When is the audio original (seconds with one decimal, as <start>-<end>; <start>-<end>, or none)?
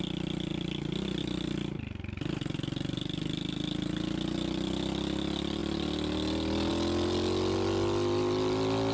0.0-8.9